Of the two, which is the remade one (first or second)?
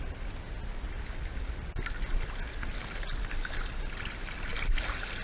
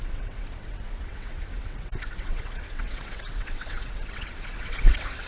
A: second